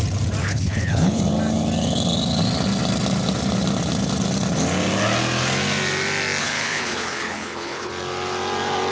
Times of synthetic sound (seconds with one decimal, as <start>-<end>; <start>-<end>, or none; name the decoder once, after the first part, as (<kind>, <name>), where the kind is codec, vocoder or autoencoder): 0.4-1.2 (codec, HILCodec); 6.4-7.9